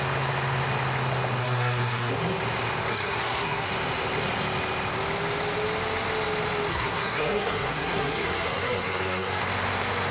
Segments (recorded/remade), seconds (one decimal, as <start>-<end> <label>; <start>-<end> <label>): 0.0-1.4 recorded; 1.4-2.1 remade; 2.1-2.9 recorded; 2.9-3.7 remade; 3.7-6.7 recorded; 6.7-9.4 remade; 9.4-10.1 recorded